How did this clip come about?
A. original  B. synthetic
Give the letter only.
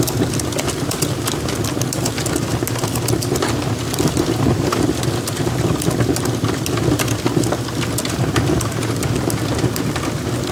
A